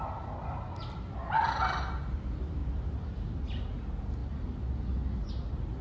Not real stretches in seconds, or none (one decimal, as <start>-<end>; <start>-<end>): none

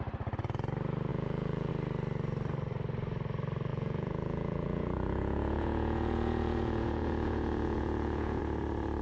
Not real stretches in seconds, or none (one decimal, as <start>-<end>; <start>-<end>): 1.1-1.7; 3.7-8.4

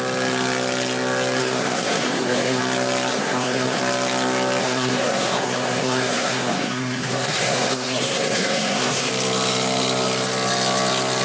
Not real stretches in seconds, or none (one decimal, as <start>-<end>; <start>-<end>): 1.4-2.6; 3.1-3.8; 4.6-9.1

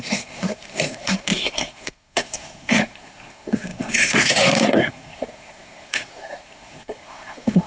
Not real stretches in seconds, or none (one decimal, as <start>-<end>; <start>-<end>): 0.0-7.7

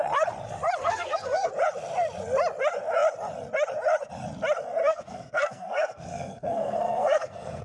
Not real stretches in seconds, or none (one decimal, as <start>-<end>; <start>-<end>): 0.8-1.5; 4.8-7.6

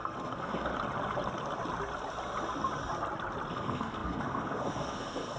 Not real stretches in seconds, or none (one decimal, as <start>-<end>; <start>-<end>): 0.0-0.7; 3.5-5.4